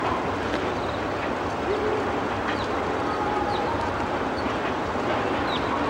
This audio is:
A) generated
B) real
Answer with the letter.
B